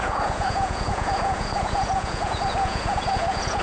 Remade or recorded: remade